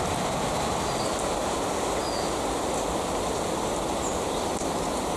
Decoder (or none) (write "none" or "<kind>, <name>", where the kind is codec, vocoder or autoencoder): none